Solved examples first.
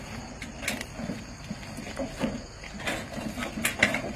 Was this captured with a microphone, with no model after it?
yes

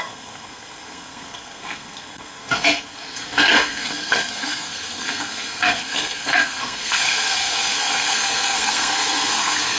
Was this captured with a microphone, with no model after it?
no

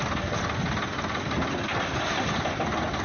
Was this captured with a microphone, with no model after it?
yes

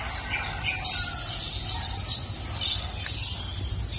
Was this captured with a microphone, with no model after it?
yes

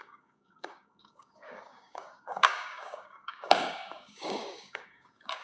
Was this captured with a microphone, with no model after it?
no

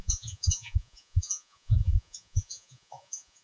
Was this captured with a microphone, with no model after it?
no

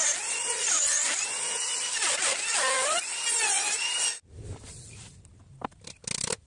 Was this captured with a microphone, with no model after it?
yes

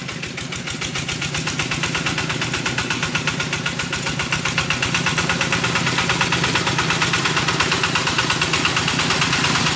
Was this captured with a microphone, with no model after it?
yes